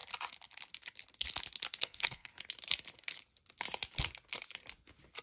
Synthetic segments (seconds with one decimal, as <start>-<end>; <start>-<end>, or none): 1.8-2.3